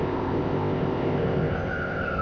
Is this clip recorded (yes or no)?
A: no